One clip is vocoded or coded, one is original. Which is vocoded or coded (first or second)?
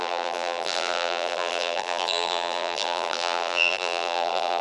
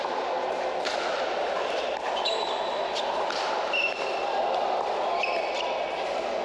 first